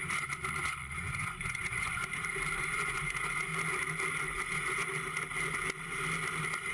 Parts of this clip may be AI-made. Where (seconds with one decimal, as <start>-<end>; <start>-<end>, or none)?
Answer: 0.0-2.0; 2.6-3.5; 4.2-4.9